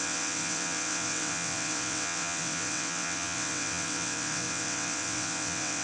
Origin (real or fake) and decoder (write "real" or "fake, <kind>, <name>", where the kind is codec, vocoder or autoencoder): fake, vocoder, WaveNeXt